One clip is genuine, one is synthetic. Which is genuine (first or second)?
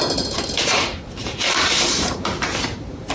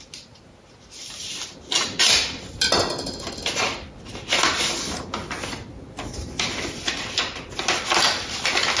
second